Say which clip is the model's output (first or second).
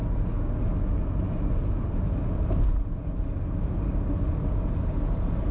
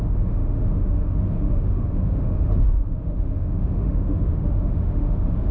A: second